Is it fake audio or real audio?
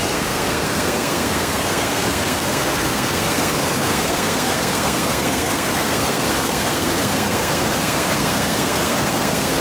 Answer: fake